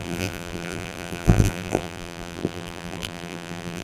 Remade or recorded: remade